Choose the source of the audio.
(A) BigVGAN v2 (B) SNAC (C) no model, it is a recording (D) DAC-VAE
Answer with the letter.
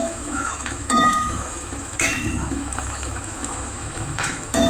D